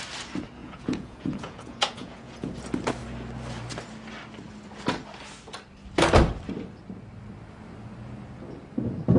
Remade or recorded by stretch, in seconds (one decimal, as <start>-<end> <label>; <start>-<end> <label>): 0.0-0.6 recorded; 0.6-2.5 remade; 2.5-9.2 recorded